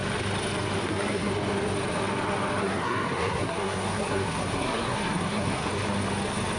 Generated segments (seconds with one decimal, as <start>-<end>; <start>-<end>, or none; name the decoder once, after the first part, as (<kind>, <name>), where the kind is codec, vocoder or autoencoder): 0.8-1.3 (codec, SNAC); 2.6-5.7